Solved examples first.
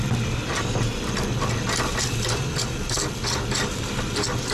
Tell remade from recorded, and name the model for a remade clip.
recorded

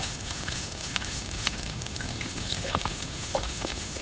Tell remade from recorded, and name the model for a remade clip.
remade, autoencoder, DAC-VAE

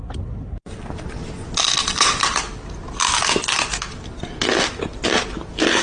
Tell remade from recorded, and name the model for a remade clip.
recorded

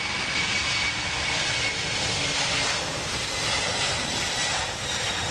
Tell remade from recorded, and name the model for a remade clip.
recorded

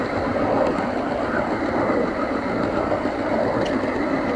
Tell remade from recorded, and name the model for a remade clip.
recorded